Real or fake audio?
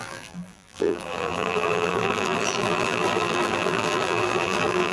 fake